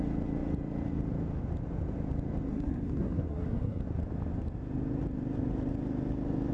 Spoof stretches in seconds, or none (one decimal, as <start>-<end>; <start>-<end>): 2.5-3.8